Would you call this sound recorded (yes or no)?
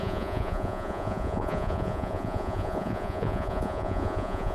no